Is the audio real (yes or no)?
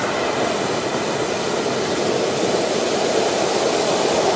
yes